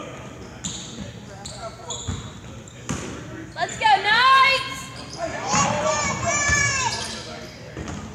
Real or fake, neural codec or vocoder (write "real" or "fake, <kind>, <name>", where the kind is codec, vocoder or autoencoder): real